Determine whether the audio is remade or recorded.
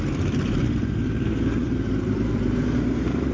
remade